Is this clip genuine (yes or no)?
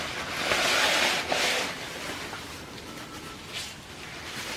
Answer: yes